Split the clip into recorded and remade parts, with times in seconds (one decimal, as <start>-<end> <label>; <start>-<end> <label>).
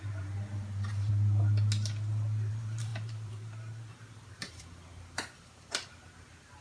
0.0-1.1 remade; 1.1-2.5 recorded; 2.5-6.6 remade